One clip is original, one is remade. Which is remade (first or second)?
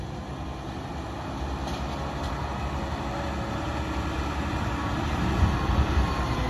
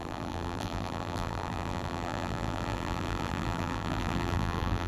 second